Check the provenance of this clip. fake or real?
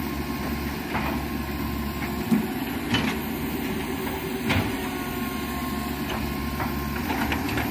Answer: real